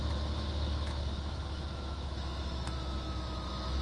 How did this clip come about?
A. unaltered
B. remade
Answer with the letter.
B